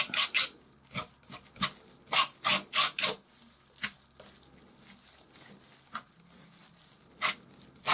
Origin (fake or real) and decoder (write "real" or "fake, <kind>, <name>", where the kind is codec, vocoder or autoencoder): real